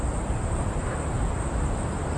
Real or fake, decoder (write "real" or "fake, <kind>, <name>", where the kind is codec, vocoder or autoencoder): real